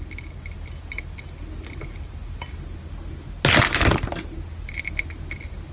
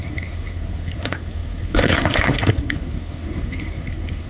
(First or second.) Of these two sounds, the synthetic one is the second